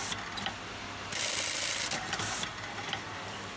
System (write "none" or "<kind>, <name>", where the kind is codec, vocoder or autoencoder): none